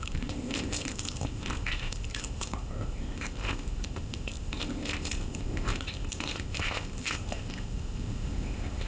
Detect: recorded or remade remade